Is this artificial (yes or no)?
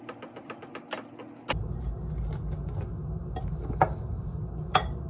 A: no